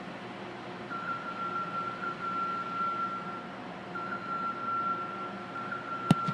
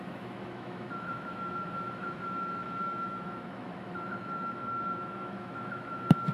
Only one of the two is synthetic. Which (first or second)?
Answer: second